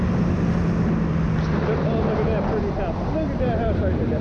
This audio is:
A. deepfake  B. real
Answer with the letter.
B